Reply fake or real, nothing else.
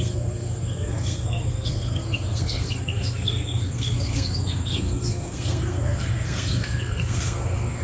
fake